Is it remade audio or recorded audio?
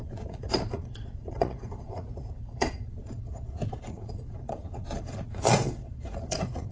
remade